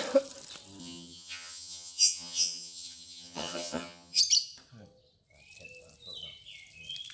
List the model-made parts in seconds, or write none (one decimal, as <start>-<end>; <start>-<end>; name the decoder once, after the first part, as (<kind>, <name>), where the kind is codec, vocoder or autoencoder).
0.8-4.2 (vocoder, HiFi-GAN)